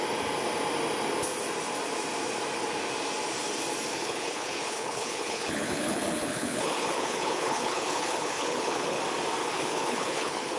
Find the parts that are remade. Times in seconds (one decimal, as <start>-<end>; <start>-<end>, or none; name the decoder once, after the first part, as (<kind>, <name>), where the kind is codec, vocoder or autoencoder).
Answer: 3.9-9.0 (codec, HILCodec); 9.4-10.6